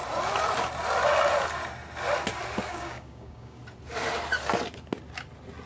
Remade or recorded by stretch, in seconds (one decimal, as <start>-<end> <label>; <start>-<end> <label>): 0.0-2.7 recorded; 2.7-3.6 remade; 3.6-5.7 recorded